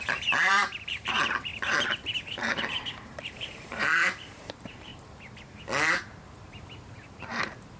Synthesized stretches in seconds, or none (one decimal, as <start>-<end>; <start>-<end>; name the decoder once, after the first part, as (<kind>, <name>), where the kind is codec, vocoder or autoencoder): 0.0-1.5 (vocoder, BigVGAN v2); 2.5-4.9; 6.1-7.8